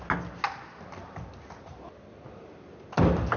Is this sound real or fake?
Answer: real